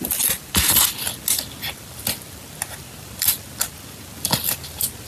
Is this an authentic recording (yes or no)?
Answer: yes